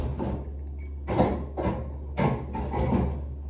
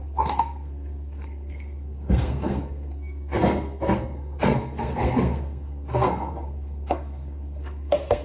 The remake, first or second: second